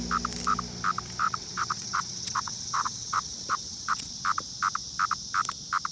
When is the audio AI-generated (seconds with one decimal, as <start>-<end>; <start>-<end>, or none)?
1.2-4.1